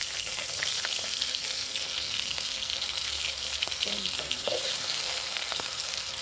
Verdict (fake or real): fake